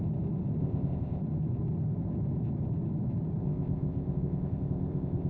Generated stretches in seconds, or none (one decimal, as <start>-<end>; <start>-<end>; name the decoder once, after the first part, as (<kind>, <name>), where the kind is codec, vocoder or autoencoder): 0.6-1.2 (codec, ZipCodec); 3.4-5.3